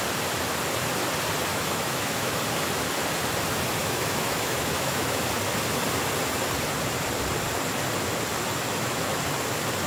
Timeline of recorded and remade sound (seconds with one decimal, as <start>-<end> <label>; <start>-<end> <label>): 0.0-1.5 recorded; 1.5-2.3 remade; 2.3-3.8 recorded; 3.8-5.2 remade; 5.2-8.7 recorded; 8.7-9.2 remade; 9.2-9.9 recorded